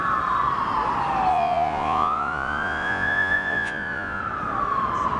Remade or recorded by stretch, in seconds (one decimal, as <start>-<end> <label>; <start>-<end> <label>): 0.0-1.3 recorded; 1.3-4.2 remade; 4.2-5.2 recorded